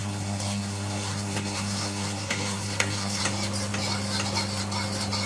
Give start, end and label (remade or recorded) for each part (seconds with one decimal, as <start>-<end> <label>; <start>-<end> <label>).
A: 0.0-3.2 remade; 3.2-5.3 recorded